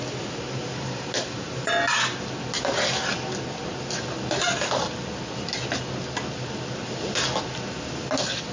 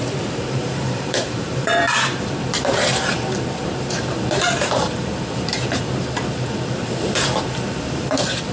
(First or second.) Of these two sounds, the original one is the first